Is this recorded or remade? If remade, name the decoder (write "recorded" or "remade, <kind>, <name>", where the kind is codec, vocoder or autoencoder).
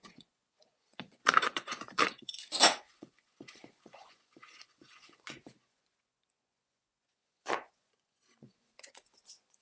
remade, vocoder, Vocos